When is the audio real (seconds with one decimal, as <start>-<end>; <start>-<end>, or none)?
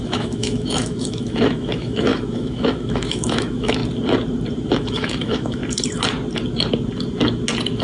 3.8-4.7; 5.6-7.8